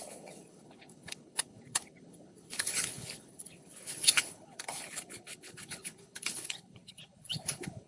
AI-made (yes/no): yes